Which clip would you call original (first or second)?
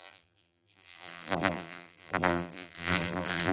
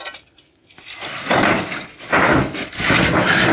second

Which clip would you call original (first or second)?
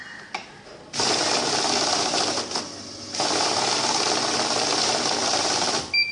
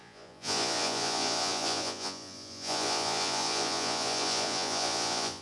first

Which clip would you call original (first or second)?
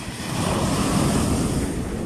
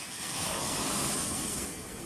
first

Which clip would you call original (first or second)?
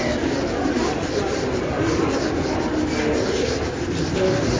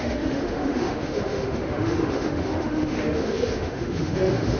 first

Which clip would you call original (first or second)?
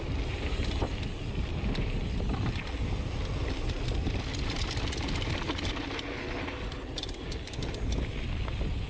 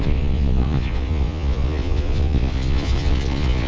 first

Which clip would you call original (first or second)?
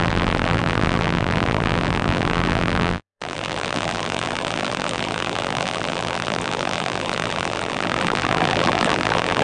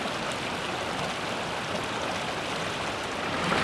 second